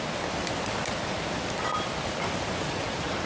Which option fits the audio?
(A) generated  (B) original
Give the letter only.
B